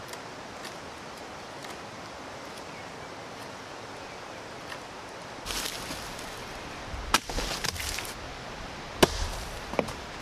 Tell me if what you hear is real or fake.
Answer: real